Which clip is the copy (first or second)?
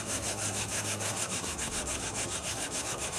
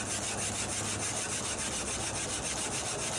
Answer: first